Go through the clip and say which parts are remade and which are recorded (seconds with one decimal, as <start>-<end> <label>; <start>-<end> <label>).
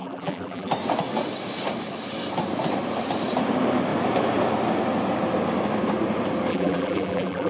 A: 0.0-0.7 remade; 0.7-6.5 recorded; 6.5-7.5 remade